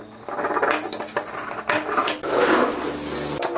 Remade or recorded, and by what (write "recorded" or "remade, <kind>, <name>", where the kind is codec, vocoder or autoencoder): recorded